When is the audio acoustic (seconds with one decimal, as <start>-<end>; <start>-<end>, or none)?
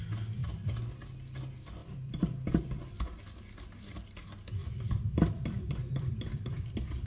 0.0-1.8; 3.2-4.6